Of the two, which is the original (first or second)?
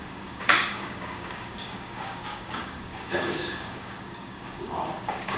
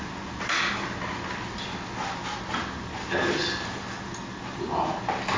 second